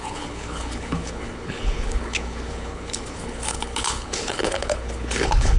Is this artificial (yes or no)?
yes